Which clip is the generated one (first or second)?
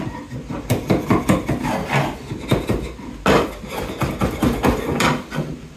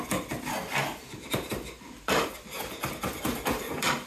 second